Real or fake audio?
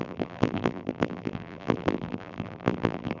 fake